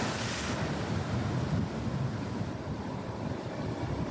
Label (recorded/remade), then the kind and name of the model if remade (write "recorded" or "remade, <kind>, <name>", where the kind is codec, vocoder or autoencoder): recorded